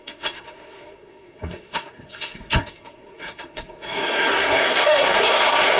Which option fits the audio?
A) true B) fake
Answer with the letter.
B